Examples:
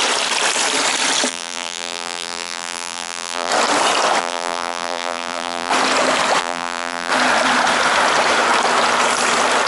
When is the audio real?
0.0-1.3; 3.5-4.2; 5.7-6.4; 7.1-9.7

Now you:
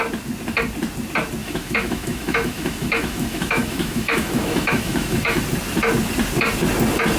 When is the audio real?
0.0-1.4; 5.4-7.2

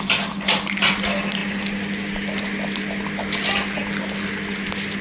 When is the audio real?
0.0-5.0

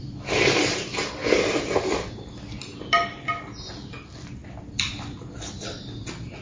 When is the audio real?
0.0-6.4